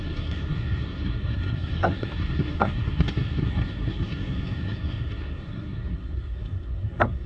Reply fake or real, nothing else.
fake